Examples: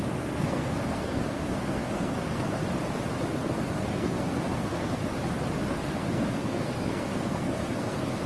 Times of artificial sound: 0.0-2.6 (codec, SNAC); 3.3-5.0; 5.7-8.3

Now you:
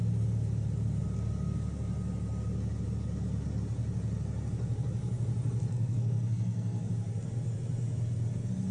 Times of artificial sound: 5.7-6.9 (codec, SNAC)

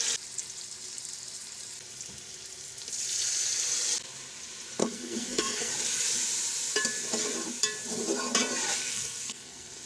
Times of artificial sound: 4.8-5.7 (codec, SNAC); 8.8-9.9